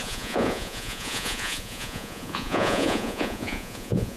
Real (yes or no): no